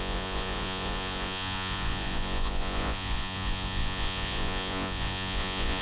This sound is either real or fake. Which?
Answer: fake